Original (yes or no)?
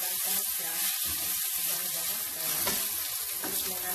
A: yes